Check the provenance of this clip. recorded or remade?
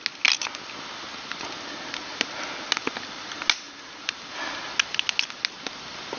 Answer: recorded